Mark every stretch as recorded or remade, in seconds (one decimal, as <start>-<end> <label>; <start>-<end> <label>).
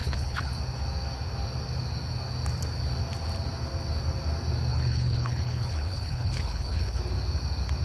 0.0-0.5 remade; 0.5-4.7 recorded; 4.7-7.0 remade; 7.0-7.8 recorded